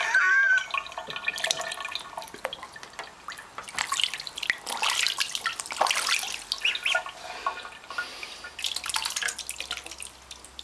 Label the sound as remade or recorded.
recorded